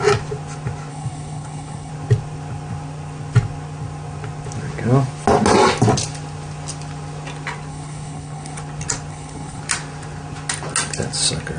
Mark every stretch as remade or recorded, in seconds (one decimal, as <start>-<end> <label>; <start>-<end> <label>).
0.0-0.9 recorded; 0.9-1.9 remade; 1.9-7.7 recorded; 7.7-8.6 remade; 8.6-9.1 recorded; 9.1-9.6 remade; 9.6-11.6 recorded